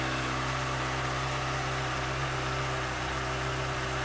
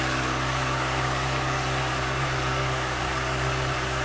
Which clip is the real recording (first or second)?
first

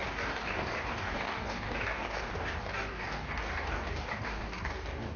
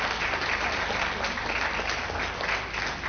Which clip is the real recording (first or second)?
second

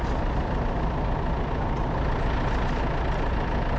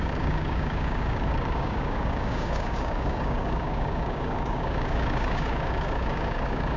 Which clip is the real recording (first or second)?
first